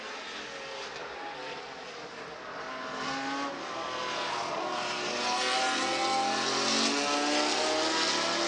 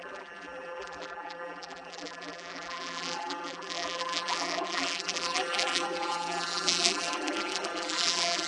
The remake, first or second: second